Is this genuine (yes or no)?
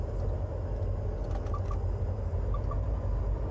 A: yes